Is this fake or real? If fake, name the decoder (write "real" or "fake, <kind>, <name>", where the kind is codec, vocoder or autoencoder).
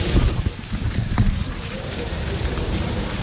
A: fake, vocoder, BigVGAN v2